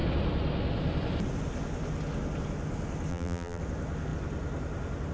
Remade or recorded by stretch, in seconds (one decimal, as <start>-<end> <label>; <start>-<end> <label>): 0.0-3.1 recorded; 3.1-3.6 remade; 3.6-5.1 recorded